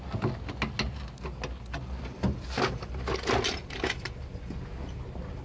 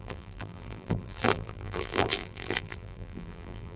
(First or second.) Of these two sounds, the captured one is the first